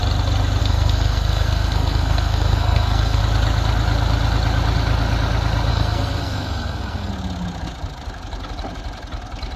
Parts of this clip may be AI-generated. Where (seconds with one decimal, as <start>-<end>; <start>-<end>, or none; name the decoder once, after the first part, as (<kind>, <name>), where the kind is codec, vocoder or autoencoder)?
0.6-3.2 (codec, SNAC); 5.7-7.1